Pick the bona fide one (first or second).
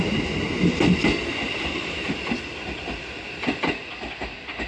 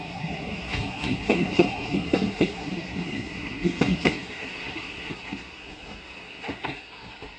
first